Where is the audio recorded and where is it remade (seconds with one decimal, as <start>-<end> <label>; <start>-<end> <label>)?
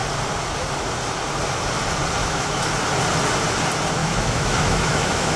0.0-2.2 recorded; 2.2-2.7 remade; 2.7-4.0 recorded; 4.0-5.4 remade